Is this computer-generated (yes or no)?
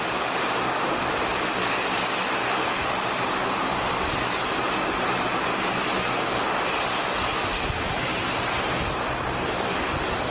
no